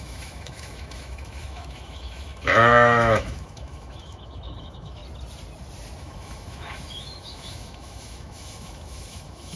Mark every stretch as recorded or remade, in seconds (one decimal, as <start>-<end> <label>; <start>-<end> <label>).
0.0-5.0 remade; 5.0-6.0 recorded; 6.0-9.6 remade